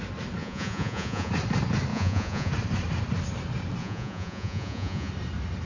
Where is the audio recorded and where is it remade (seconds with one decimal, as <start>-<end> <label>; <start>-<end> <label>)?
0.0-0.4 recorded; 0.4-1.3 remade; 1.3-1.9 recorded; 1.9-2.5 remade; 2.5-3.8 recorded; 3.8-5.1 remade; 5.1-5.7 recorded